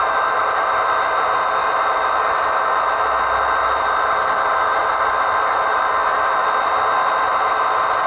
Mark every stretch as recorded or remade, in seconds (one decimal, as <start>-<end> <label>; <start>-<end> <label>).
0.0-4.8 remade; 4.8-5.5 recorded; 5.5-8.1 remade